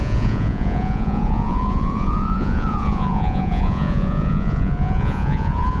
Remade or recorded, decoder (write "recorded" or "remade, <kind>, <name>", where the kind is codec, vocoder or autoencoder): remade, vocoder, Vocos